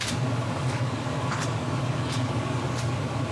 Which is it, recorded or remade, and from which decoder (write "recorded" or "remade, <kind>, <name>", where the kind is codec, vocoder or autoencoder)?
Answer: remade, codec, DAC